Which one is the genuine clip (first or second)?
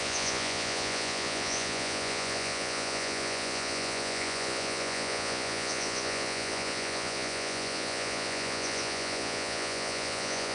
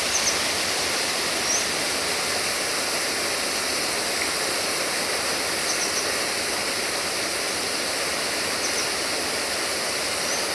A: second